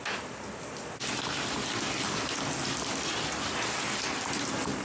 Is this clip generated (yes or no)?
no